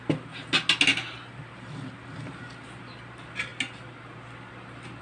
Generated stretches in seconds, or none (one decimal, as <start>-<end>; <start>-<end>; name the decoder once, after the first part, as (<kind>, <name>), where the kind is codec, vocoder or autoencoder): none